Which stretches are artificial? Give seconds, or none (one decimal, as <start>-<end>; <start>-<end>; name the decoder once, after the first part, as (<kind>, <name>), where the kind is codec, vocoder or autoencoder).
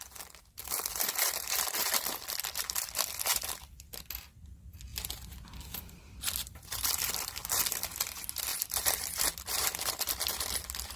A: 0.0-4.9 (vocoder, BigVGAN v2); 5.6-11.0